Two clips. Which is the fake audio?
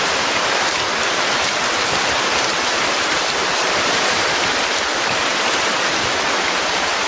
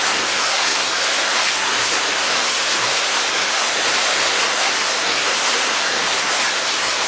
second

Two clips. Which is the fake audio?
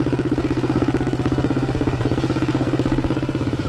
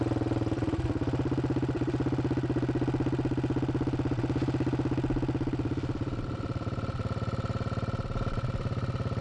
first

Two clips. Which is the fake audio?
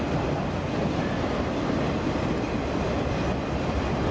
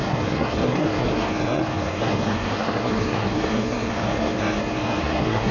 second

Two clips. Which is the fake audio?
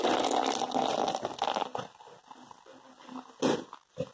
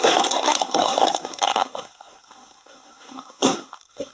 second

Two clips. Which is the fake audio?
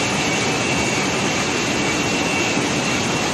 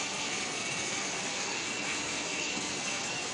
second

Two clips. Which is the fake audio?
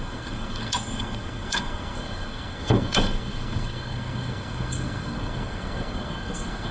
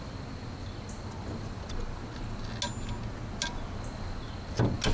first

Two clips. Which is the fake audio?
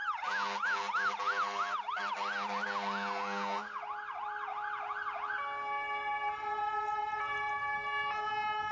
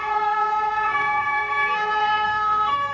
second